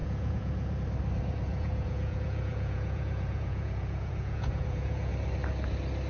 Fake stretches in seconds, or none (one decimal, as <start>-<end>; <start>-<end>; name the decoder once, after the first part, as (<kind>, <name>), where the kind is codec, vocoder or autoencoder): 0.0-0.8 (vocoder, Vocos); 1.5-5.1